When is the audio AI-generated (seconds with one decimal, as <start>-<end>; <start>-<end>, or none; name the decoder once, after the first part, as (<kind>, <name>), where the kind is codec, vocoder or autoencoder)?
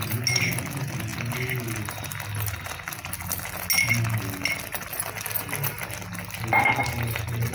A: none